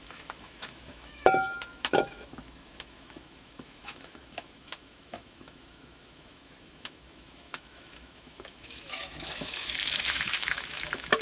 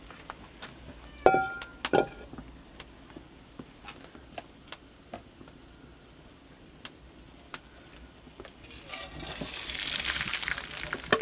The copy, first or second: first